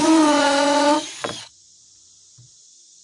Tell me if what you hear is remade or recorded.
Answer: remade